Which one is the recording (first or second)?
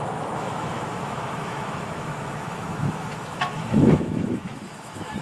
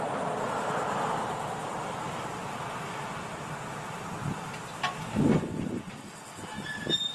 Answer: second